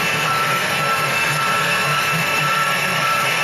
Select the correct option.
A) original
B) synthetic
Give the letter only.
B